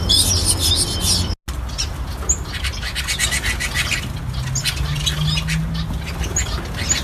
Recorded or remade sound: recorded